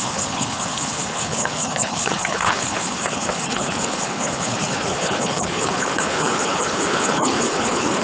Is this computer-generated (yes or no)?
yes